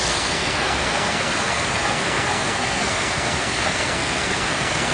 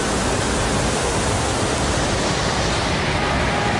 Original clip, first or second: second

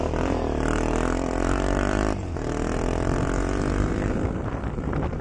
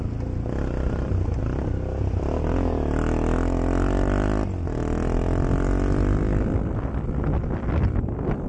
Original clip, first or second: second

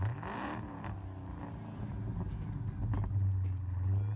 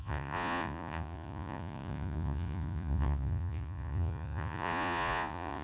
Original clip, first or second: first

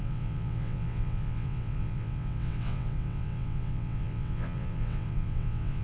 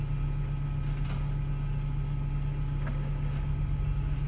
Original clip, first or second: second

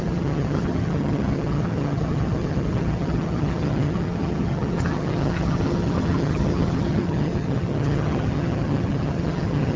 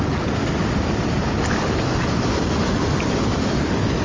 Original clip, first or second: second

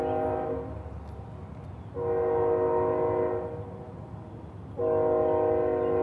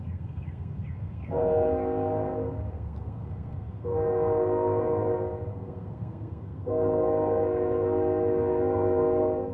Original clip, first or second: first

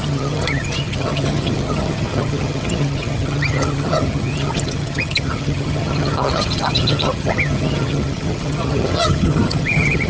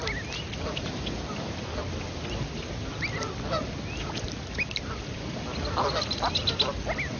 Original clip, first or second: second